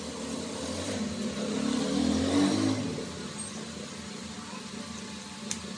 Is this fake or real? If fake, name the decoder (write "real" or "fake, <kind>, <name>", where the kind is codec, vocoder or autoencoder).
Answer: real